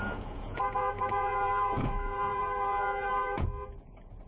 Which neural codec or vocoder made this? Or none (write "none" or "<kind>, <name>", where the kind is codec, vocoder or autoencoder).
vocoder, Vocos